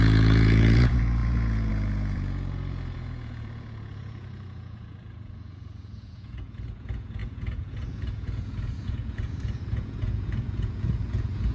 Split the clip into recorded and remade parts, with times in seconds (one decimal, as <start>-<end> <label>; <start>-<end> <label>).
0.0-11.5 remade